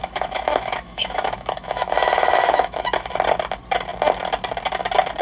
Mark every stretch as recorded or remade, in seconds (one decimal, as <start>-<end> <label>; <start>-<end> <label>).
0.0-3.1 remade; 3.1-5.2 recorded